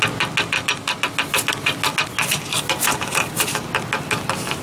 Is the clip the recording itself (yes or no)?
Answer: yes